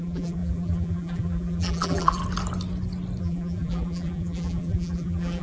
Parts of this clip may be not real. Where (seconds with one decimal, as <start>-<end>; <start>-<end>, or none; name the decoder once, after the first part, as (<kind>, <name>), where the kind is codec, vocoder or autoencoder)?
0.0-2.2 (vocoder, BigVGAN v2); 3.2-5.4